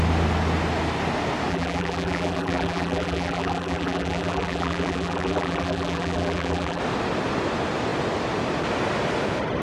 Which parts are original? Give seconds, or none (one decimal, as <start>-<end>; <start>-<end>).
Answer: 0.0-1.5; 6.8-9.6

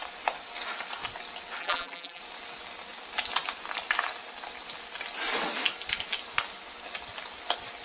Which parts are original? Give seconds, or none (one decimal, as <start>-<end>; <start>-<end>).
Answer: 0.0-1.6; 2.2-7.8

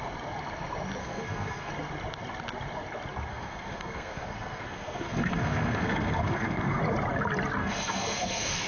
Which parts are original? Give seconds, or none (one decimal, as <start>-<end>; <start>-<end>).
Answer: 0.0-1.0; 1.7-3.3; 6.8-7.6